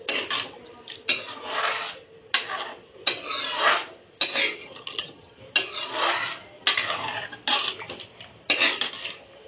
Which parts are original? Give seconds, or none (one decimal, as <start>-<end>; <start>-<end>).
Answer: 0.0-4.6; 5.4-9.5